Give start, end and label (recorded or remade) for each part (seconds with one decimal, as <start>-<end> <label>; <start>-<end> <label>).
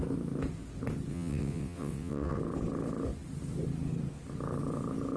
0.0-1.1 recorded; 1.1-2.4 remade; 2.4-5.2 recorded